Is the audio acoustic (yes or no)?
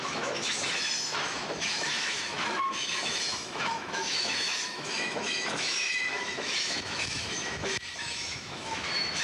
no